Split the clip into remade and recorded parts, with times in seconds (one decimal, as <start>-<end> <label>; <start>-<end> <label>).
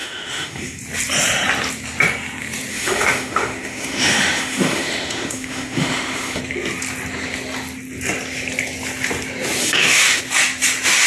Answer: 0.0-0.8 remade; 0.8-2.7 recorded; 2.7-6.4 remade; 6.4-9.6 recorded; 9.6-10.2 remade; 10.2-11.1 recorded